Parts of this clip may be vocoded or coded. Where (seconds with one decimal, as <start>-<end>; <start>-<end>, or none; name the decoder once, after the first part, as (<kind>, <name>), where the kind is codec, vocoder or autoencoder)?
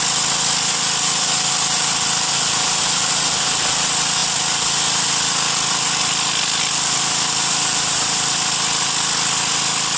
none